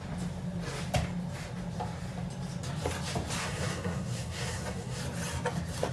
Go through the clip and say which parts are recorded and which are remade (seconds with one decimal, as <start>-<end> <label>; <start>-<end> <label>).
0.0-3.4 recorded; 3.4-5.0 remade; 5.0-5.9 recorded